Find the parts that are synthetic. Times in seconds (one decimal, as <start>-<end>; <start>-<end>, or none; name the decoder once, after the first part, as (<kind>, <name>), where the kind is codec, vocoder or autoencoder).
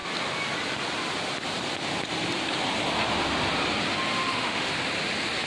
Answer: 4.1-4.7 (autoencoder, DAC-VAE)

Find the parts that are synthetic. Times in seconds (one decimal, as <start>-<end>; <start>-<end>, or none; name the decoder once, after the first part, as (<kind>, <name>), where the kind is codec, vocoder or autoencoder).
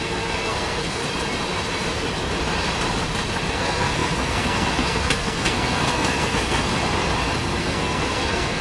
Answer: 0.0-1.0 (codec, SNAC); 3.5-6.7; 7.6-8.6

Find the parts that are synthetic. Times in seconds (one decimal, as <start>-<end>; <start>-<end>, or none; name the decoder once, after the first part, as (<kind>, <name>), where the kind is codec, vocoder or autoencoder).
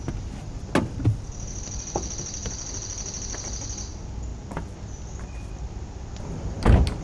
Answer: none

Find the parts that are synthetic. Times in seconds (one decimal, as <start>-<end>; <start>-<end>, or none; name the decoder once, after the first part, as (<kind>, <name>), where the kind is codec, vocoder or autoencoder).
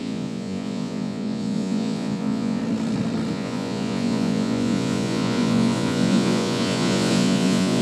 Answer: 0.0-2.6 (vocoder, Vocos); 3.3-7.8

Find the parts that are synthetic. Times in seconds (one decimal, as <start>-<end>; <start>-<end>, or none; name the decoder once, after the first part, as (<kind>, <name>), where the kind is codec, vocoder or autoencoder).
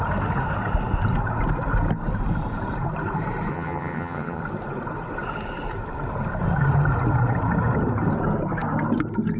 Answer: 3.5-4.4 (vocoder, HiFi-GAN)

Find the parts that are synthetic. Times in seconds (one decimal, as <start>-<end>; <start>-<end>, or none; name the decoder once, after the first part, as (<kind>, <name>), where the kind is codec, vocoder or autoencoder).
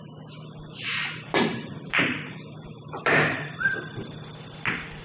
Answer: 0.7-3.7 (vocoder, BigVGAN v2)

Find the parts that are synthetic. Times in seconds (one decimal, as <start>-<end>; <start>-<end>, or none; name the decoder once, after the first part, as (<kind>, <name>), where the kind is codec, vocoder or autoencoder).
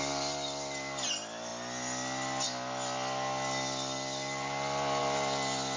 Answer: none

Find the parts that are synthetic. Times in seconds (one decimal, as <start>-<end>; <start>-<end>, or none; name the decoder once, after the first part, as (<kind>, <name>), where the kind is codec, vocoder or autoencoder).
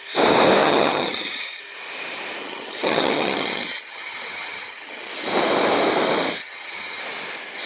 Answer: 0.6-1.6 (vocoder, HiFi-GAN); 2.4-5.1; 6.4-7.0